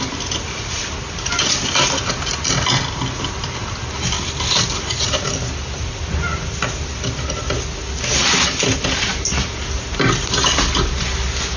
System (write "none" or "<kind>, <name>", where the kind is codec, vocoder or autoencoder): none